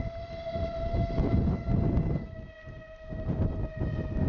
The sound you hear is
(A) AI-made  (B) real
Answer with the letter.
B